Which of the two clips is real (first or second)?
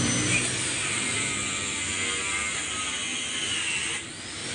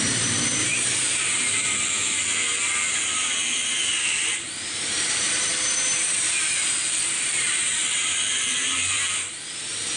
first